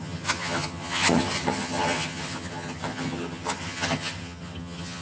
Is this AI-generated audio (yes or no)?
yes